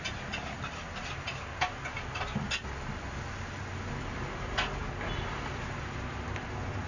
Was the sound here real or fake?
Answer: real